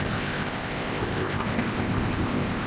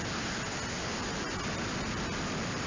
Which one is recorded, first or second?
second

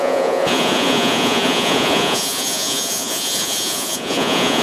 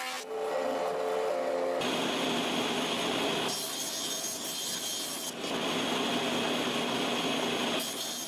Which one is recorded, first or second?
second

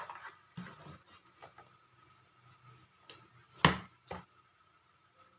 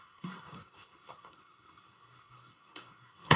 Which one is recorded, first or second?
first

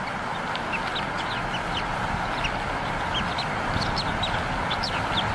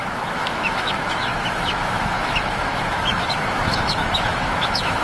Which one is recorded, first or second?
first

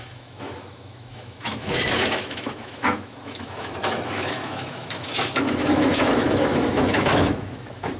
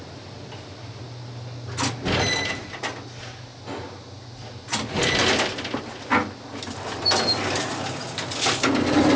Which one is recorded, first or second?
second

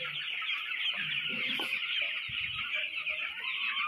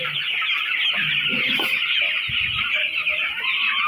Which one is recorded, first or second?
second